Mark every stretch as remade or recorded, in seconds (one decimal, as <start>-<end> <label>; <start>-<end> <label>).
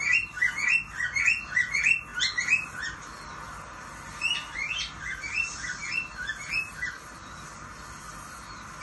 0.0-8.8 recorded